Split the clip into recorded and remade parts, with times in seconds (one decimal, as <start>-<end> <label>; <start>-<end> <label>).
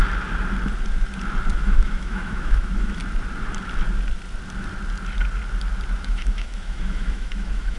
0.0-1.5 recorded; 1.5-3.0 remade; 3.0-6.0 recorded; 6.0-7.8 remade